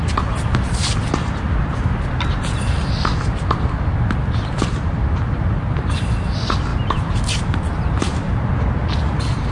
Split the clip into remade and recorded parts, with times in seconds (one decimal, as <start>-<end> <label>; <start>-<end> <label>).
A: 0.0-9.5 recorded